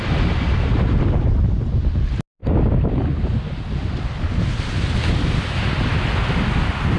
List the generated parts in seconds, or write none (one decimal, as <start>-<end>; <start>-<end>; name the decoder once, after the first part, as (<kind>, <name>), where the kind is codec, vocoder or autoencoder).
none